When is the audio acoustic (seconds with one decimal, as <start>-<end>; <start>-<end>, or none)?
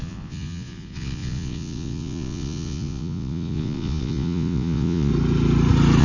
5.1-6.0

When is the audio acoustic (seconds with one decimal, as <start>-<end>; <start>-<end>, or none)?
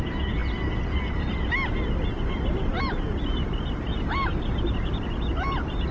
0.0-5.9